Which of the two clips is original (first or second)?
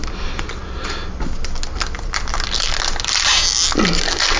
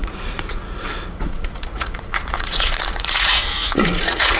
first